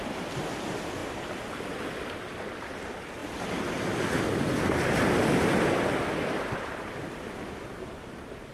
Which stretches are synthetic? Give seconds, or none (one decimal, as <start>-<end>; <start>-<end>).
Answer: none